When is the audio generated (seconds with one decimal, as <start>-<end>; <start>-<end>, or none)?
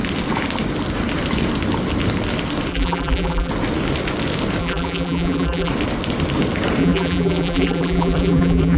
2.7-3.5; 4.6-5.7; 6.8-8.8